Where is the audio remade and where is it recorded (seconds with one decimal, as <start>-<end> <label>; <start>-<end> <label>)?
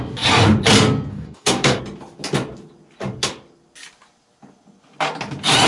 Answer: 0.0-1.1 recorded; 1.1-1.8 remade; 1.8-5.7 recorded